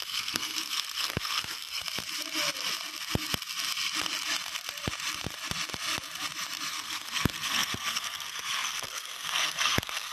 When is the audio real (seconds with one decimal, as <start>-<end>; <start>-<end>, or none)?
1.8-6.7